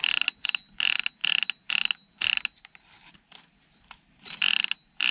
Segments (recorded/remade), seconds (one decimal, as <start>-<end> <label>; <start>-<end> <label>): 0.0-5.1 recorded

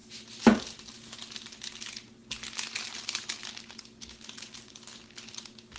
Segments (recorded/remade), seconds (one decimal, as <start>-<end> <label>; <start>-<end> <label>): 0.0-5.8 recorded

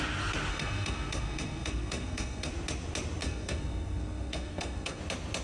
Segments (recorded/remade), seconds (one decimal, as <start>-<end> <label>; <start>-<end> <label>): 0.0-0.5 recorded; 0.5-2.5 remade; 2.5-3.2 recorded; 3.2-5.0 remade; 5.0-5.4 recorded

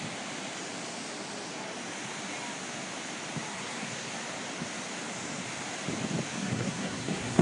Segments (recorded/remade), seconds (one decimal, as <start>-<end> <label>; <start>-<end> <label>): 0.0-3.5 recorded; 3.5-4.1 remade; 4.1-6.3 recorded; 6.3-7.4 remade

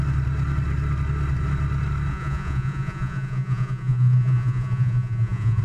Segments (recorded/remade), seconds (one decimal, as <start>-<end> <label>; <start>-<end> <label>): 0.0-2.1 recorded; 2.1-5.6 remade

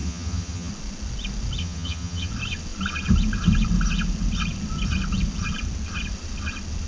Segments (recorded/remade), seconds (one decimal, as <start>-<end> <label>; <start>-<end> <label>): 0.0-0.7 remade; 0.7-1.6 recorded; 1.6-2.3 remade; 2.3-6.9 recorded

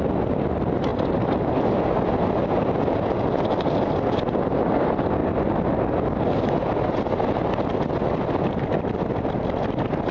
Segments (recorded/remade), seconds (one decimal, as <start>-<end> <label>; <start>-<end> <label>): 0.0-10.1 recorded